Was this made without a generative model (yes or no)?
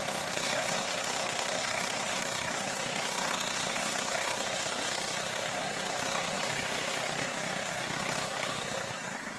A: no